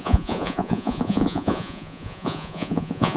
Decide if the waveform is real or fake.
fake